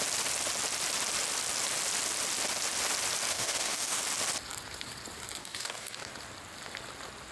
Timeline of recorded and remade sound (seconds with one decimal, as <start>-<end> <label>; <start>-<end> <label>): 0.0-3.3 recorded; 3.3-4.0 remade; 4.0-5.4 recorded; 5.4-6.1 remade; 6.1-7.3 recorded